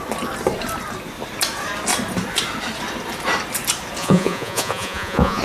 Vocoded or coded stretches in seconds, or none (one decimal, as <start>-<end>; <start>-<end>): 4.0-5.4